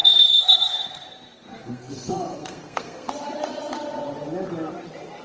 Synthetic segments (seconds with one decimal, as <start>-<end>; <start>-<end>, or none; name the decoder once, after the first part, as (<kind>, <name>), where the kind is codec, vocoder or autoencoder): 0.0-3.1 (codec, SNAC)